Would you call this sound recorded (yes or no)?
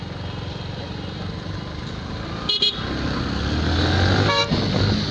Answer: yes